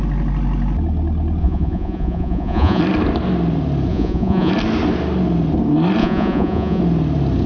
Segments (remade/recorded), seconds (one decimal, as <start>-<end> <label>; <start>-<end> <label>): 0.0-1.4 recorded; 1.4-2.8 remade; 2.8-3.9 recorded; 3.9-4.5 remade; 4.5-6.0 recorded; 6.0-6.8 remade; 6.8-7.5 recorded